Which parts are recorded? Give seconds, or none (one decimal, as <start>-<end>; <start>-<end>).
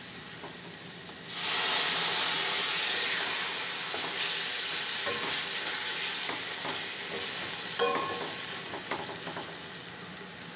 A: 0.0-10.6